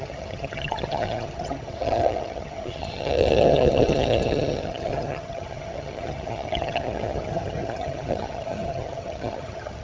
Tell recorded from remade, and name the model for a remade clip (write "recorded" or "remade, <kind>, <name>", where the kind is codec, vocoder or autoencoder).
remade, vocoder, HiFi-GAN